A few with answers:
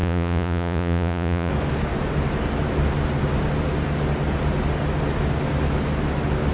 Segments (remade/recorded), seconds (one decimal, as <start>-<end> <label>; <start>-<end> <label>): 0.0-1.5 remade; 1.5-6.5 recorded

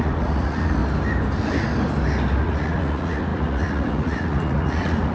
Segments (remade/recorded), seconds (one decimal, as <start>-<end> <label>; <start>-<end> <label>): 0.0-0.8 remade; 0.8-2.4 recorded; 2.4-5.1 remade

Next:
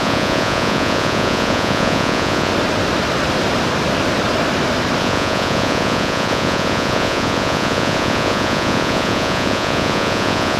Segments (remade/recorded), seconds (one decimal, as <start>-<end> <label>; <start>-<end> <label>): 0.0-2.5 remade; 2.5-5.0 recorded; 5.0-10.6 remade

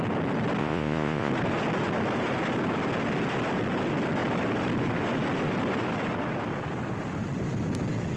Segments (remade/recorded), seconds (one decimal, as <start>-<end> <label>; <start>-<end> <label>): 0.0-0.6 recorded; 0.6-1.3 remade; 1.3-8.2 recorded

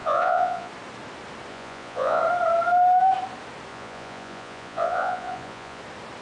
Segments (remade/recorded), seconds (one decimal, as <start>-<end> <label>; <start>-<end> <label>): 0.0-0.7 remade; 0.7-1.5 recorded; 1.5-2.2 remade; 2.2-3.7 recorded; 3.7-5.8 remade; 5.8-6.2 recorded

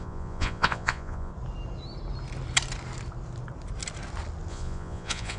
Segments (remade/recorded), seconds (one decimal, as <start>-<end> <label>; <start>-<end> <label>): 0.0-1.3 remade; 1.3-4.5 recorded; 4.5-5.4 remade